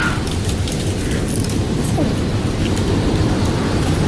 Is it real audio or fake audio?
real